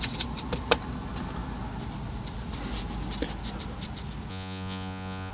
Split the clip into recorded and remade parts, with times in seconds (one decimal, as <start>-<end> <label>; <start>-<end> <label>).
0.0-4.3 recorded; 4.3-5.3 remade